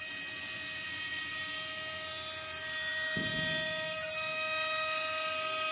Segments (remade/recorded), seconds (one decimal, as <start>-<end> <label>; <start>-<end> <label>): 0.0-5.7 recorded